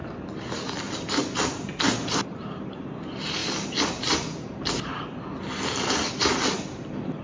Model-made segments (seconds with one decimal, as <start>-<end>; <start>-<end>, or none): none

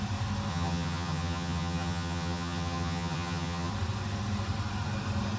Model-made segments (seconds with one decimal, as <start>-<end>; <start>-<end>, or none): 0.5-3.7

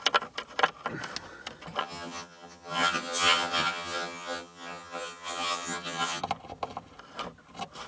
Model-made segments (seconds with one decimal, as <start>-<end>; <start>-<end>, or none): 1.8-6.2

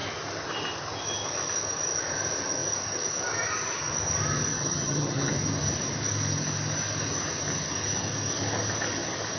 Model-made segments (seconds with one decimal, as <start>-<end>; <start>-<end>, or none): 4.5-5.3

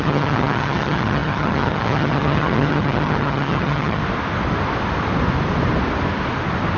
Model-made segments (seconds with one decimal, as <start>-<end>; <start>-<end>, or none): 0.0-4.0

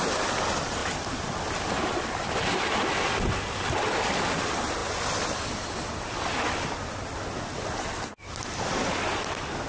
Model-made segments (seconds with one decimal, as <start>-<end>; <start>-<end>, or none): none

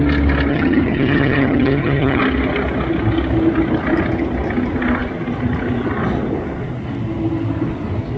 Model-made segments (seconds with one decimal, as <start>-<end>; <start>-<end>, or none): 0.5-2.2